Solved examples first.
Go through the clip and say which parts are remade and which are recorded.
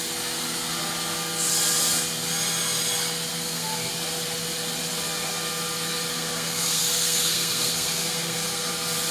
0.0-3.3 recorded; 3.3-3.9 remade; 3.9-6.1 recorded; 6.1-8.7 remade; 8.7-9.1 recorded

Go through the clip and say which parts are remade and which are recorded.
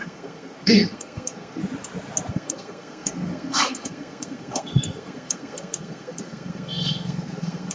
0.0-1.6 remade; 1.6-2.3 recorded; 2.3-7.7 remade